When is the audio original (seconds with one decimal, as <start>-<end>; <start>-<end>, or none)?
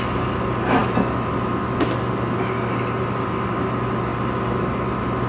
0.0-5.3